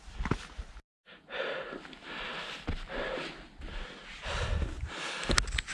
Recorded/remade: recorded